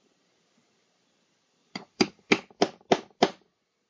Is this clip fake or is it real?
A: fake